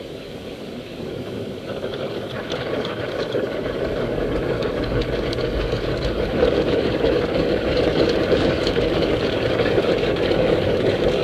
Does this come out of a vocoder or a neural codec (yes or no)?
yes